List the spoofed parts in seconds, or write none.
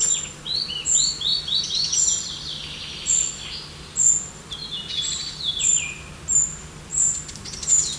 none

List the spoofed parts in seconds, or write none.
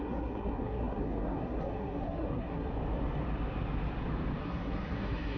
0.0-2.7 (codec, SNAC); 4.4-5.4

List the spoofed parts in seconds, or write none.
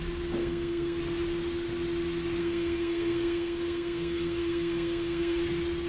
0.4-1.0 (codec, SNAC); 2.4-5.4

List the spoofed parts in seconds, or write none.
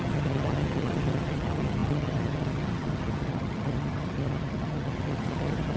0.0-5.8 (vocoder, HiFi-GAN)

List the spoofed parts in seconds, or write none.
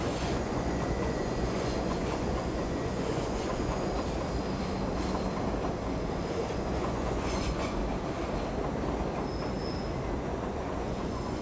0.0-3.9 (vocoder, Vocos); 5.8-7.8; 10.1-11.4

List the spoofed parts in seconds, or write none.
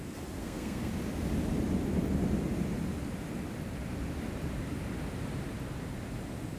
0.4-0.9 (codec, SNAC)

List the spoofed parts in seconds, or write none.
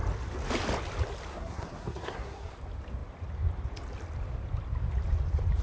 1.3-2.5 (codec, SNAC)